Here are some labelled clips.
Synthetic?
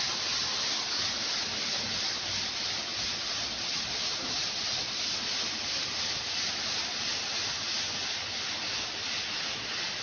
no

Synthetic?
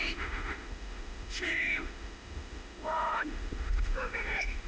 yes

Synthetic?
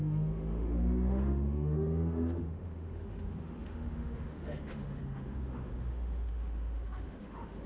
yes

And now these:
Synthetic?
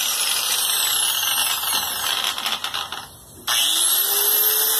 no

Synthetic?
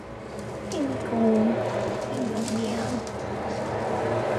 no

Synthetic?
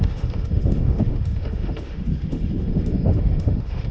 yes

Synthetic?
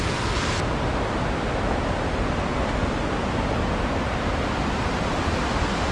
no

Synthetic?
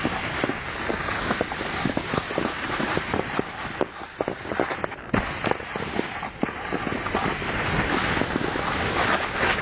no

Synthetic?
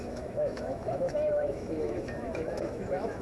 yes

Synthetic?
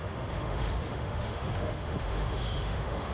yes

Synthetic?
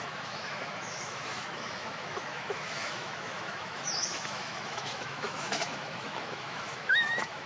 yes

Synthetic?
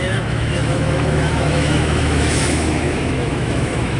yes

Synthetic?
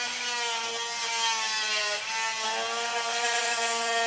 no